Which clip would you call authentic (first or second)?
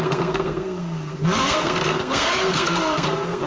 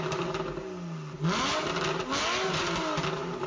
second